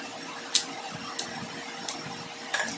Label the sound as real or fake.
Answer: real